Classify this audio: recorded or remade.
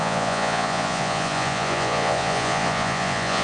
remade